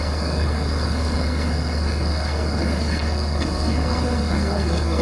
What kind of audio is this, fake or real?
fake